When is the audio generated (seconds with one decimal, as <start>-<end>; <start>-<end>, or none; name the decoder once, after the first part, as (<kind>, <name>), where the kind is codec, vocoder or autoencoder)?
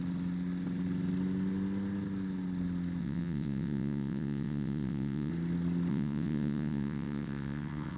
3.0-5.3 (vocoder, WaveNeXt); 5.9-8.0